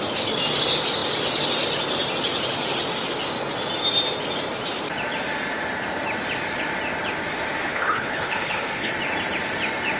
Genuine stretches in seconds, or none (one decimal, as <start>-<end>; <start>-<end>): 0.0-7.6; 8.9-10.0